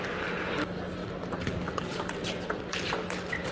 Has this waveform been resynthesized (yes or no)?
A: no